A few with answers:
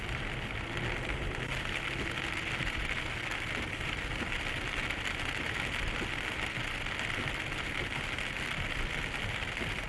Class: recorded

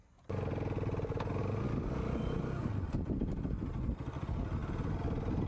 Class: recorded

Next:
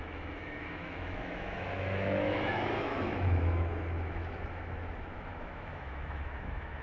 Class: remade